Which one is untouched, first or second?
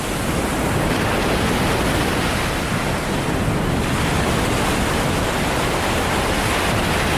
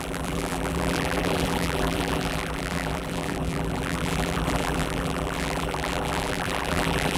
first